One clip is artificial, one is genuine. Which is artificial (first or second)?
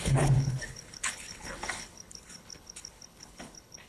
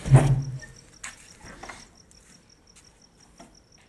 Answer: first